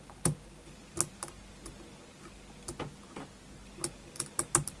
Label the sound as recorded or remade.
recorded